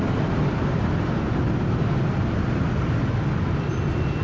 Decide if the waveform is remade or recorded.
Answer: recorded